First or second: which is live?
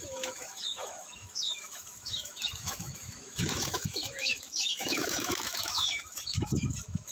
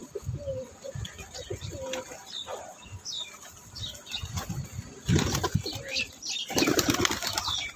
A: second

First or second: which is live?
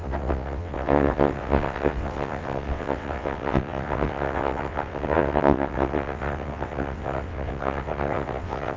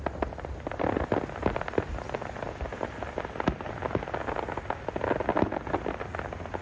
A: second